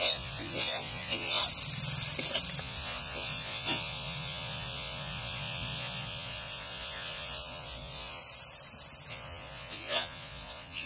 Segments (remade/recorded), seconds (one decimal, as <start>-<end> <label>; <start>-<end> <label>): 0.0-1.4 remade; 1.4-2.6 recorded; 2.6-8.2 remade; 8.2-9.1 recorded; 9.1-10.9 remade